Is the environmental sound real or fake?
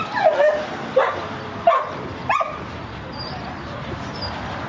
real